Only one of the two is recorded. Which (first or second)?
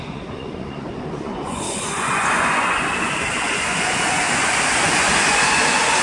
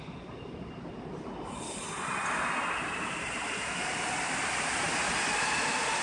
second